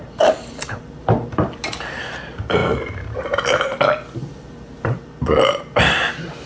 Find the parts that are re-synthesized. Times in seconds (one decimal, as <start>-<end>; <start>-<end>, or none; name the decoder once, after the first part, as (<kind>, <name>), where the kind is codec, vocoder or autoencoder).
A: 0.0-2.6 (vocoder, BigVGAN v2); 4.3-6.5